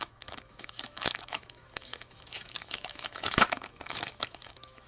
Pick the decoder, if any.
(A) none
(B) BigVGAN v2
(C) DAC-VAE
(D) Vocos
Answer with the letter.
C